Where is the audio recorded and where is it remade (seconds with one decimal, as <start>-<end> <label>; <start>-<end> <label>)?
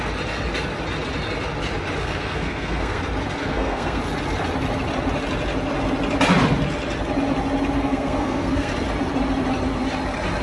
0.0-2.0 recorded; 2.0-3.0 remade; 3.0-3.4 recorded; 3.4-4.0 remade; 4.0-7.8 recorded; 7.8-8.7 remade; 8.7-10.4 recorded